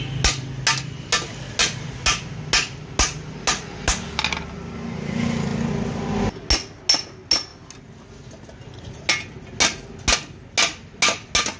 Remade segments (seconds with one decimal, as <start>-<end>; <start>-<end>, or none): none